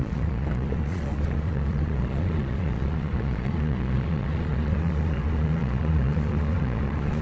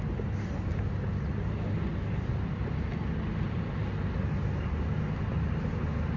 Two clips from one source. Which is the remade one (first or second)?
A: first